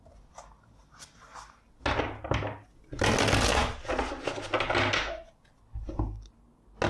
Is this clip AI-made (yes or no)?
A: no